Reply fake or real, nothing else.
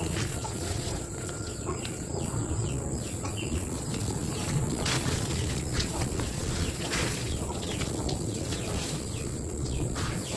fake